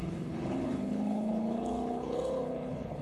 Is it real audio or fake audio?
fake